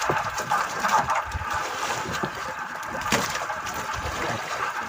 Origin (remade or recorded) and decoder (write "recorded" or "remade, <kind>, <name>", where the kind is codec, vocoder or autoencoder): remade, vocoder, BigVGAN v2